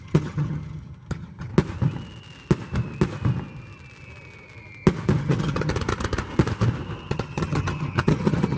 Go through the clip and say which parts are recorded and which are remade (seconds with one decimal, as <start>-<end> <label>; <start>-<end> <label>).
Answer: 0.0-1.5 remade; 1.5-5.2 recorded; 5.2-5.7 remade; 5.7-7.1 recorded; 7.1-8.6 remade